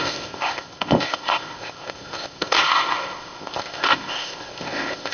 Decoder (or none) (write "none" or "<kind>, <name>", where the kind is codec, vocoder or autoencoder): codec, ZipCodec